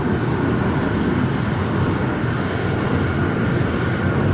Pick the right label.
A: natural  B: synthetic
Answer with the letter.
A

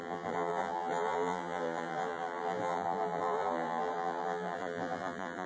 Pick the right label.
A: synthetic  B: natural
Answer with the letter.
A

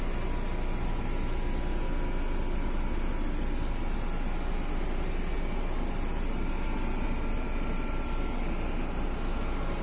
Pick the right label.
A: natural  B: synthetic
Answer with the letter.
A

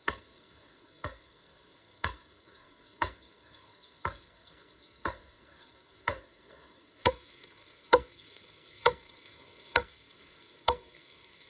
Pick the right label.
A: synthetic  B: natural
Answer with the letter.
A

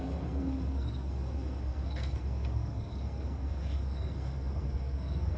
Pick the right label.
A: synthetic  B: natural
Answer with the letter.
A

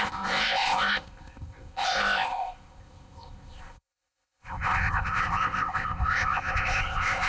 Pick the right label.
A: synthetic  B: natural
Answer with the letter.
A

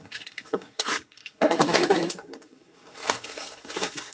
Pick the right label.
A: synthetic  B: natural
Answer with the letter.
A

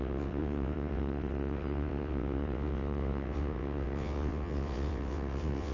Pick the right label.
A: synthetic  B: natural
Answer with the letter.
A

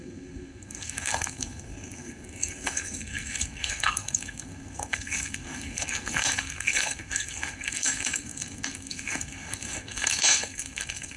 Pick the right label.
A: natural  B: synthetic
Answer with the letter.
B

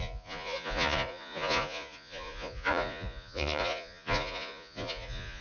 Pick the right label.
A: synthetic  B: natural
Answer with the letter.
A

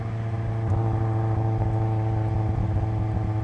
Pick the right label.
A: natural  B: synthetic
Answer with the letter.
A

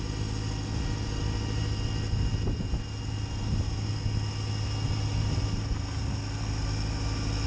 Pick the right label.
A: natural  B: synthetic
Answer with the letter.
A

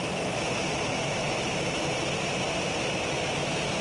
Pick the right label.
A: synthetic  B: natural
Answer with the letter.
B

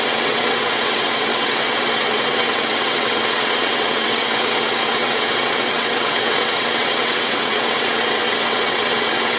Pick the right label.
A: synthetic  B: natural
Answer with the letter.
A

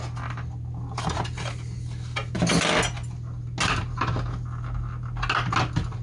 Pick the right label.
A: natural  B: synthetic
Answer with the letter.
A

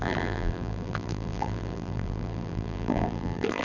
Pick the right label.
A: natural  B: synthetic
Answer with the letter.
B